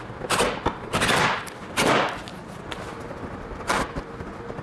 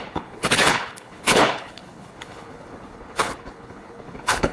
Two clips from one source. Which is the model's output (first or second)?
second